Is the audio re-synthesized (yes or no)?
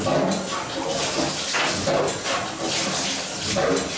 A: no